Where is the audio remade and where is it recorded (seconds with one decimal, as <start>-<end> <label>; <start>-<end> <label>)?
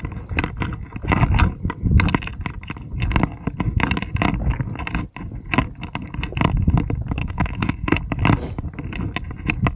0.0-7.2 recorded; 7.2-8.0 remade; 8.0-9.8 recorded